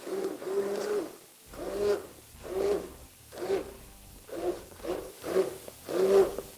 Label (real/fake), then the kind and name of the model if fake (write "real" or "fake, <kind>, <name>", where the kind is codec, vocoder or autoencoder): fake, codec, DAC